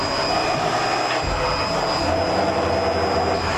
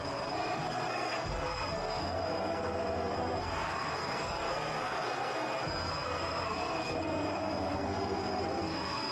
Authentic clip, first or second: first